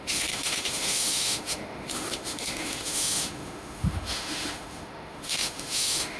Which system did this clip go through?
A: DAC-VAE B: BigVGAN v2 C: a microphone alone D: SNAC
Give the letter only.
A